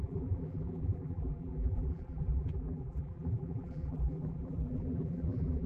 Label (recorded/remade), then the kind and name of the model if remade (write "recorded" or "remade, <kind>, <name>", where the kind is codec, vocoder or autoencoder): remade, vocoder, BigVGAN v2